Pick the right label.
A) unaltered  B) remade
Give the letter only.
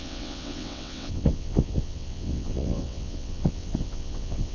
B